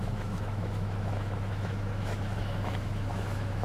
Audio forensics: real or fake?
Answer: fake